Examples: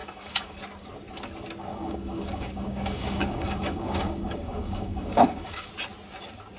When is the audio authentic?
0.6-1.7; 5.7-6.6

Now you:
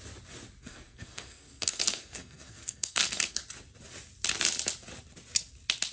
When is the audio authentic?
0.0-0.6; 3.4-5.9

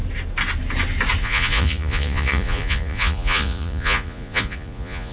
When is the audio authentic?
0.0-1.2